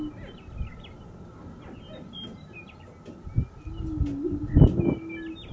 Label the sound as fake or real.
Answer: real